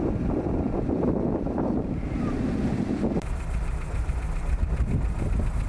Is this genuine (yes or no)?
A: no